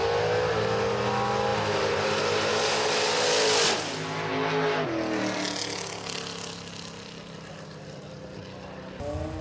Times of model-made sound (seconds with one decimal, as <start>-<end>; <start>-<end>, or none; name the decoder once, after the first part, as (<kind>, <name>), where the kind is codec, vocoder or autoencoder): none